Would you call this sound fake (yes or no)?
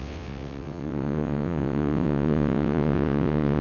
yes